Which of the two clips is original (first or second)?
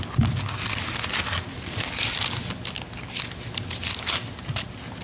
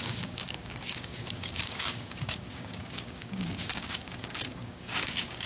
first